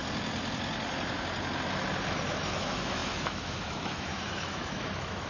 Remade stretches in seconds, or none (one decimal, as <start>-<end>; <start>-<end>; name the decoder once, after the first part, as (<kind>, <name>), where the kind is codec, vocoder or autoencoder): 2.5-5.3 (autoencoder, DAC-VAE)